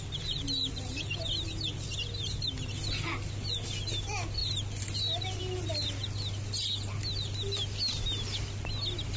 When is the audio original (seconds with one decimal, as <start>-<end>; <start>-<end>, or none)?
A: 0.0-9.2